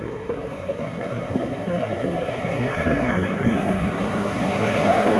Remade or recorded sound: remade